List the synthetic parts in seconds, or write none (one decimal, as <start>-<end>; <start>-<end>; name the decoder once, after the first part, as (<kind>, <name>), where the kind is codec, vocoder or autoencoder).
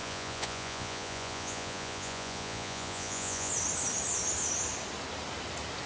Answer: 0.0-3.5 (vocoder, Vocos)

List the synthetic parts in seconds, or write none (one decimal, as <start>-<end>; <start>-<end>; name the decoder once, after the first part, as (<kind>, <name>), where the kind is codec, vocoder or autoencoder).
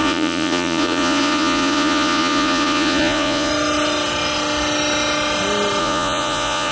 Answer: 0.0-3.5 (vocoder, Vocos); 5.8-6.7